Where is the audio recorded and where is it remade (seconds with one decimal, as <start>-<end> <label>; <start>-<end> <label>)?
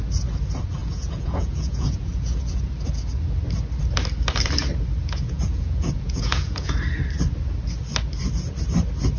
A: 0.0-0.8 recorded; 0.8-2.7 remade; 2.7-5.0 recorded; 5.0-6.7 remade; 6.7-9.2 recorded